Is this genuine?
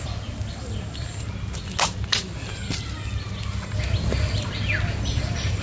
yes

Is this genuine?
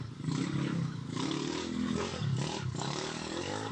no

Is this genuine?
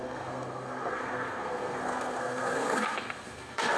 no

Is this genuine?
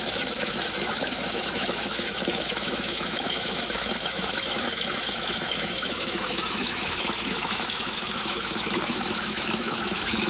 no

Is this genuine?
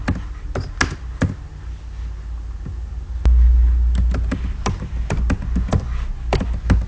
yes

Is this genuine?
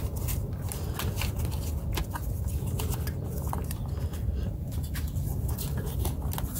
yes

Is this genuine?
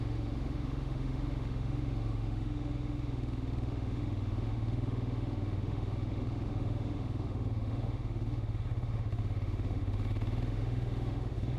no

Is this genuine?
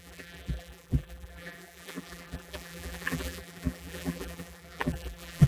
no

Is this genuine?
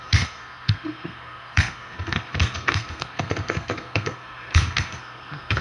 no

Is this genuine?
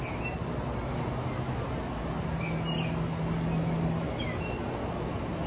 yes